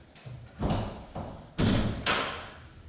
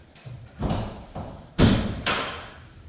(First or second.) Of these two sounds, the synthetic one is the second